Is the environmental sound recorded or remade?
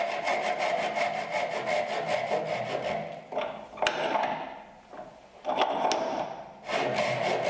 recorded